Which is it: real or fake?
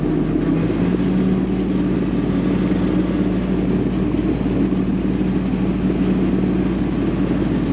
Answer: real